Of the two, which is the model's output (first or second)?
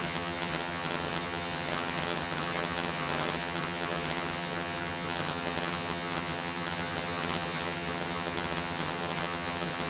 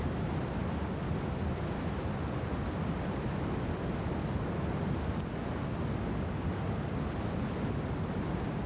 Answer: first